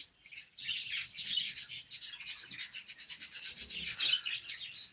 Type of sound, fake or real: real